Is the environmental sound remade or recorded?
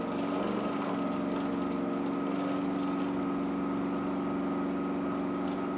recorded